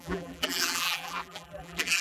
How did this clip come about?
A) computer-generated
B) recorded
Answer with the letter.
A